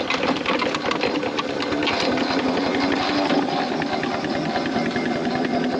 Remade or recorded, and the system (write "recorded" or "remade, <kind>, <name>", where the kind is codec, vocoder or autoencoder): recorded